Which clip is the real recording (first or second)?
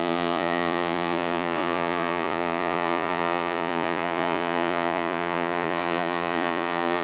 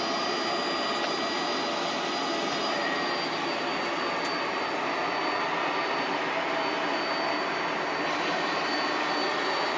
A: second